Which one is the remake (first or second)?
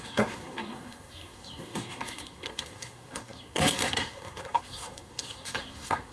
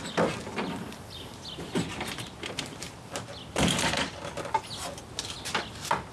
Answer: first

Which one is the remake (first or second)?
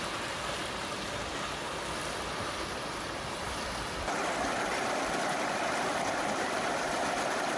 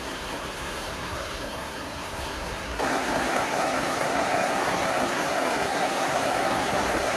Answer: second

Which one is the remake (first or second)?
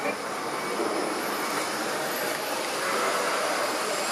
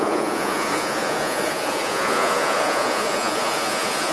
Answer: second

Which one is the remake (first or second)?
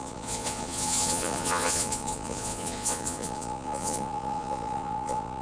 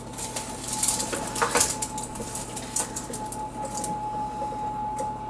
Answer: first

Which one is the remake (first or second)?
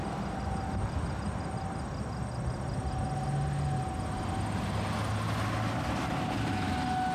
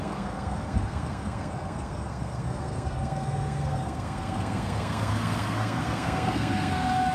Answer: second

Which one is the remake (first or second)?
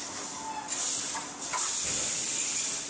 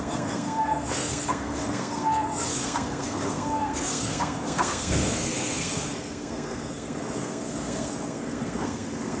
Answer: second